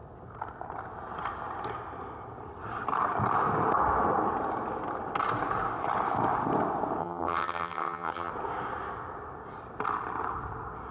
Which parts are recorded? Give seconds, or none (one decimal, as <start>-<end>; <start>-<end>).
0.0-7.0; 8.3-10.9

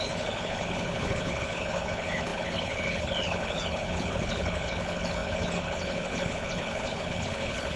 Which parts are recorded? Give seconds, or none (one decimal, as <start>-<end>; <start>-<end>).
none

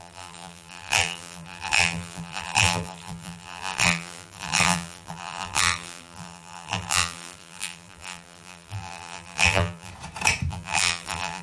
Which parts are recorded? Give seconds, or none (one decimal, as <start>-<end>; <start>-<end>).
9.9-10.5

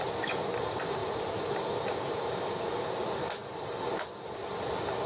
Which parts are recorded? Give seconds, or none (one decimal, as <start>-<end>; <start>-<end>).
0.0-5.1

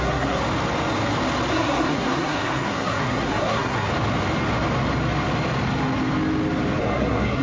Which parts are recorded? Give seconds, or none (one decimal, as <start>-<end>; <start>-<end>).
0.4-1.5; 3.9-6.8

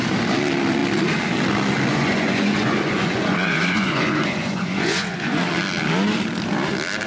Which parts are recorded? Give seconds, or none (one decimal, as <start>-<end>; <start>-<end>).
0.0-1.9; 5.4-7.1

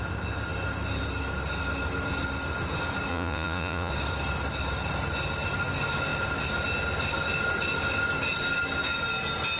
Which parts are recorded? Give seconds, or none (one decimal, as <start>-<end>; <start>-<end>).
0.0-3.1; 3.9-9.6